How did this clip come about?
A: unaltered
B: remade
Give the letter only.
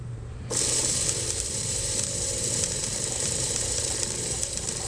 B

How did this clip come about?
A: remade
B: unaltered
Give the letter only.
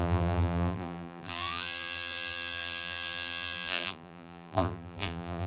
A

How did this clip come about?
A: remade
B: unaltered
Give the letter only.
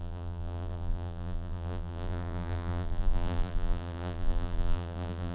A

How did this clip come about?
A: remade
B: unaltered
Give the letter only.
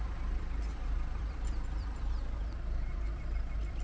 A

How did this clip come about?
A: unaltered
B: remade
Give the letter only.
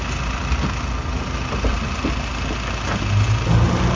A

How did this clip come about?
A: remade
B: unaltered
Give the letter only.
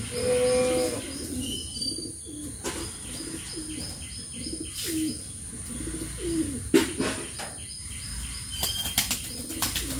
B